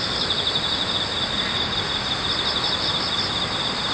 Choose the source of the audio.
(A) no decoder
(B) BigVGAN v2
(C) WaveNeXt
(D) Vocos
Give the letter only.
A